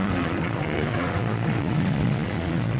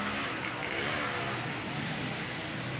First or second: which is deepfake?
first